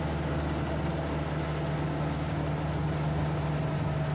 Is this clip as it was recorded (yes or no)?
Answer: yes